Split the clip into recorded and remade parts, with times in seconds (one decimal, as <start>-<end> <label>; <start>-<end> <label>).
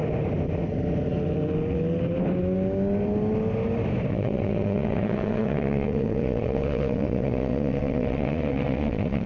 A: 0.0-4.1 recorded; 4.1-9.3 remade